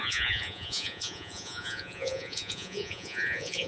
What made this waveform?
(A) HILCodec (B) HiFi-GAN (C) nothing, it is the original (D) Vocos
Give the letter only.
D